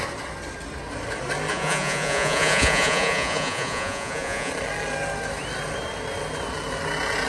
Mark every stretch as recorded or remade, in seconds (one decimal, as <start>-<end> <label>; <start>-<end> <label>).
0.0-1.5 recorded; 1.5-4.5 remade; 4.5-7.3 recorded